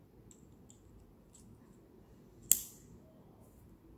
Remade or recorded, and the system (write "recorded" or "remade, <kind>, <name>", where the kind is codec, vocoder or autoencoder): recorded